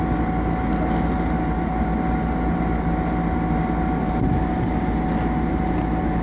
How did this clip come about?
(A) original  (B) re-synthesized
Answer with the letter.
A